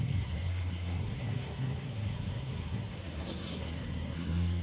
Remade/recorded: remade